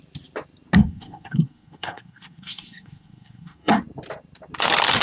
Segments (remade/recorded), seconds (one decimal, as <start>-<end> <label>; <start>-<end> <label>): 0.0-0.8 recorded; 0.8-3.8 remade; 3.8-5.0 recorded